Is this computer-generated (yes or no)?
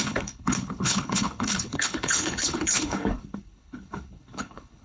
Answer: yes